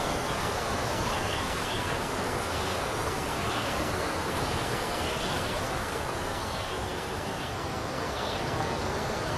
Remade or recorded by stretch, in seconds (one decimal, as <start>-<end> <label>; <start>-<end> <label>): 0.0-9.4 remade